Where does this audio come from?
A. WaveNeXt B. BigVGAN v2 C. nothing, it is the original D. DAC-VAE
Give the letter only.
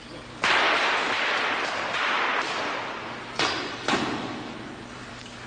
C